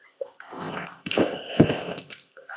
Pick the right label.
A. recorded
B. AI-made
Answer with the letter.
B